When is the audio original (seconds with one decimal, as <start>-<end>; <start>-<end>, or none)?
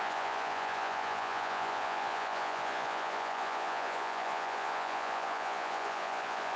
none